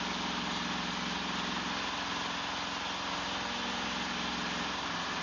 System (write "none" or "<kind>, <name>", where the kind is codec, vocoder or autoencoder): none